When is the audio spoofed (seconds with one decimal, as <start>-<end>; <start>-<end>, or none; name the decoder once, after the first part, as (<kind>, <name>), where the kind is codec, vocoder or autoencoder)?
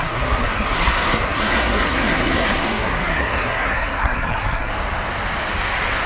0.0-4.7 (codec, SNAC)